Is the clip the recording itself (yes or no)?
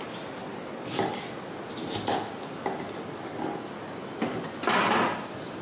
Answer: yes